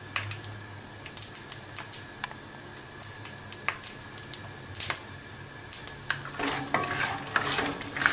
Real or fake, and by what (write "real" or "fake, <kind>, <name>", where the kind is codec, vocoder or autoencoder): real